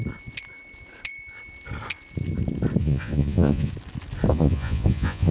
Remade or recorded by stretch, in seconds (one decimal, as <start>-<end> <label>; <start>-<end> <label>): 0.0-2.8 recorded; 2.8-3.7 remade; 3.7-4.3 recorded; 4.3-5.3 remade